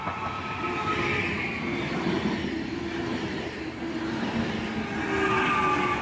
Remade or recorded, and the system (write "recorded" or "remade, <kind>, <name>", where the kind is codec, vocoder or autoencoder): recorded